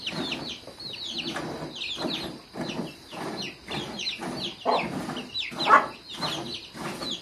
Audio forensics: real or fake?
real